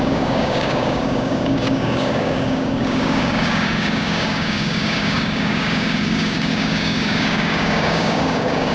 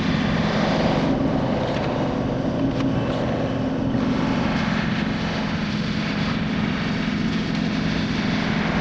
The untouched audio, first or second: second